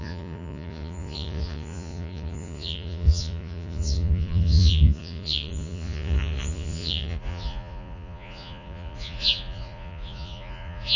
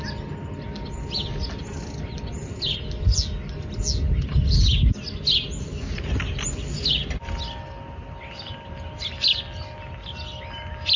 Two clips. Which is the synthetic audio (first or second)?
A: first